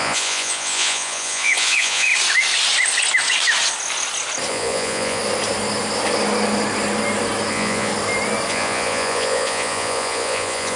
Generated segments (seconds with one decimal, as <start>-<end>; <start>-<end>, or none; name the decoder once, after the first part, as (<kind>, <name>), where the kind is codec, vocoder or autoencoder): 0.0-2.1 (vocoder, Vocos); 4.5-5.2; 7.5-7.9; 8.5-10.8